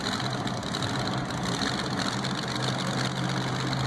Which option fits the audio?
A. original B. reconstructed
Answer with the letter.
A